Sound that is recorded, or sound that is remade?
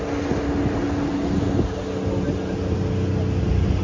recorded